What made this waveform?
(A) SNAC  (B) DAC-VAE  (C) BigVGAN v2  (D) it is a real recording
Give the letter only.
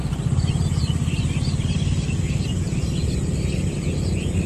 D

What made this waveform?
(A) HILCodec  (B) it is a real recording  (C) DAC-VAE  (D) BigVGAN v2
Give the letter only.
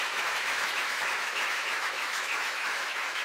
C